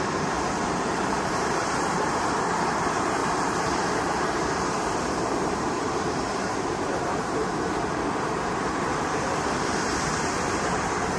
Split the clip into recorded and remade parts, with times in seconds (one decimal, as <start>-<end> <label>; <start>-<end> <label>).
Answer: 0.0-11.2 remade

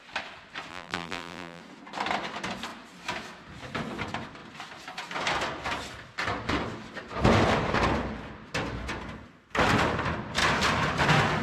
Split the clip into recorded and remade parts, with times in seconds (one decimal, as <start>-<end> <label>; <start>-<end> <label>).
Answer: 0.0-0.7 recorded; 0.7-1.6 remade; 1.6-11.4 recorded

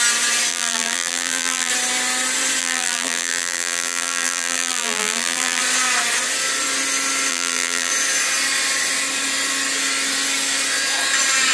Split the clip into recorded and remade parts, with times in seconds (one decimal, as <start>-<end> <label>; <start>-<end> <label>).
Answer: 0.0-0.5 recorded; 0.5-1.7 remade; 1.7-2.6 recorded; 2.6-5.6 remade; 5.6-7.3 recorded; 7.3-7.9 remade; 7.9-11.5 recorded

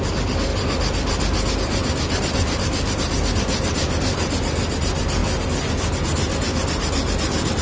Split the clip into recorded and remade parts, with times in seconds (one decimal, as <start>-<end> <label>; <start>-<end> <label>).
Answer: 0.0-7.6 recorded

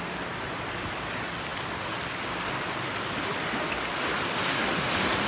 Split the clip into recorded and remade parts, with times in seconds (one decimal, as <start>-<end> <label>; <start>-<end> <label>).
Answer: 0.0-5.3 recorded